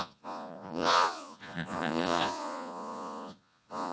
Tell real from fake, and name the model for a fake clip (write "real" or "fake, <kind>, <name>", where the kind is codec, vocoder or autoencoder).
fake, vocoder, Vocos